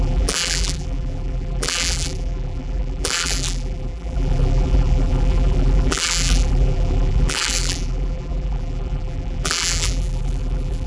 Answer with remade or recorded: remade